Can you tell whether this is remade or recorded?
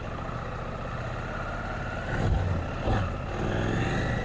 recorded